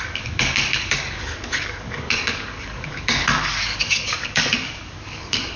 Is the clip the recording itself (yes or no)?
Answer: no